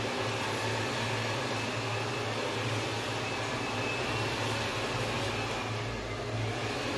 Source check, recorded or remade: recorded